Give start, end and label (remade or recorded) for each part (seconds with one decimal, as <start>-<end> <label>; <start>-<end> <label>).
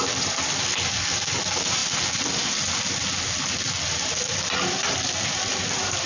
0.0-1.8 remade; 1.8-3.8 recorded; 3.8-6.1 remade